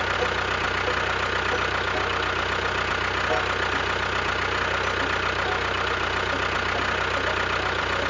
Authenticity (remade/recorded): recorded